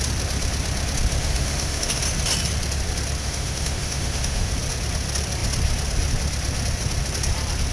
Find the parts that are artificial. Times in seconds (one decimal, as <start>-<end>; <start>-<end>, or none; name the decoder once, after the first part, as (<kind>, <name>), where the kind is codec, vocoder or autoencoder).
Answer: 1.2-2.0 (autoencoder, DAC-VAE); 3.2-4.5